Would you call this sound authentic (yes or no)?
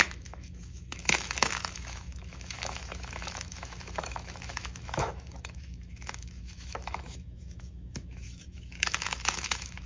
no